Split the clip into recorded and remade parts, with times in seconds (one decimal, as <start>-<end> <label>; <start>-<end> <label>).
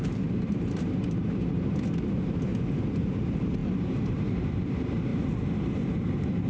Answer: 0.0-5.1 remade; 5.1-6.1 recorded; 6.1-6.5 remade